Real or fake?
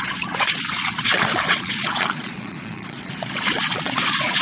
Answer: fake